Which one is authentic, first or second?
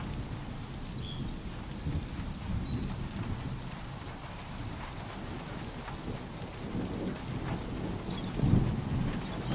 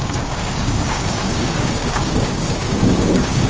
first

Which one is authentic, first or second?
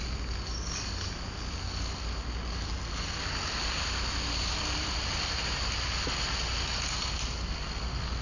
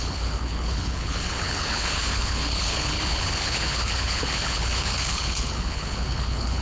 first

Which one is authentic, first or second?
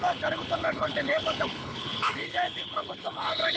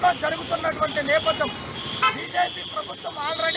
second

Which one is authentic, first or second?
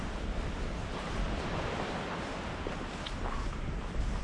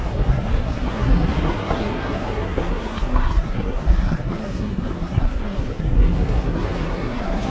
first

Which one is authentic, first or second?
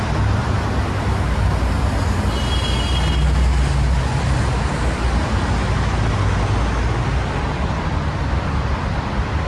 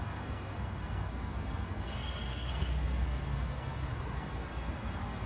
first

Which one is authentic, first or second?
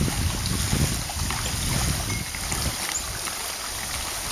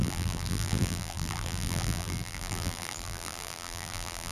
first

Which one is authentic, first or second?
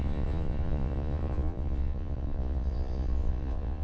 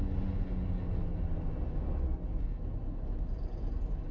second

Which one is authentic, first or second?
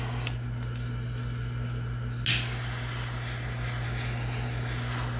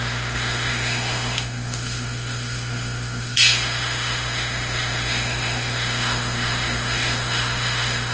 first